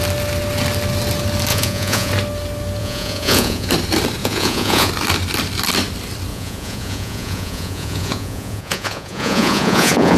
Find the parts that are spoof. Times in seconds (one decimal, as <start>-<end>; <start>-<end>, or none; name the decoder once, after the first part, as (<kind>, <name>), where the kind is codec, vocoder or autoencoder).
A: 1.5-2.1 (vocoder, Vocos); 2.8-3.7; 4.2-4.9; 6.3-10.2